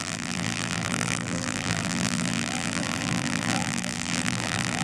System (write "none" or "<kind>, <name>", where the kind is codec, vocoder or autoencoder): vocoder, BigVGAN v2